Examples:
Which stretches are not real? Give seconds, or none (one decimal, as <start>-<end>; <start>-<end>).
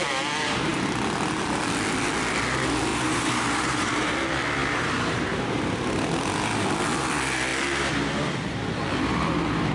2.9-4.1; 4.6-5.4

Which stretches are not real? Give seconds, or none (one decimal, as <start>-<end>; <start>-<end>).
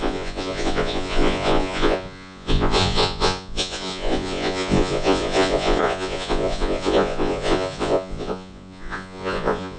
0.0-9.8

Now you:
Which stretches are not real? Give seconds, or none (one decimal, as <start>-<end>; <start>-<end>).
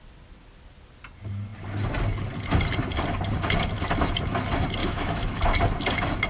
4.8-5.4